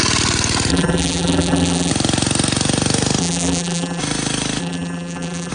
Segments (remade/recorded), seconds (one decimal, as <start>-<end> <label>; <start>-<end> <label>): 0.0-0.7 recorded; 0.7-1.9 remade; 1.9-3.2 recorded; 3.2-4.0 remade; 4.0-4.6 recorded; 4.6-5.5 remade